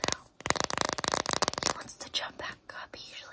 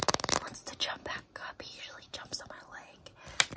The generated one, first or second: second